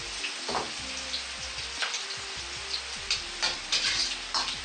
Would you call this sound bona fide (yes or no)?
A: yes